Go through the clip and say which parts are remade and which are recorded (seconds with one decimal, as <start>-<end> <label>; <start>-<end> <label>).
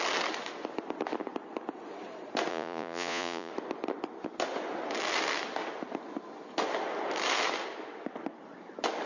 0.0-2.5 recorded; 2.5-3.5 remade; 3.5-9.1 recorded